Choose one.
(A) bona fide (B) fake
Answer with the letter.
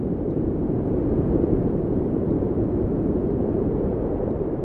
B